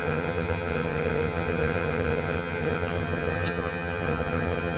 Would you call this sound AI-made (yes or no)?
yes